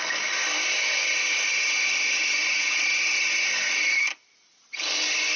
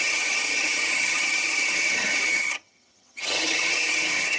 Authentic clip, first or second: first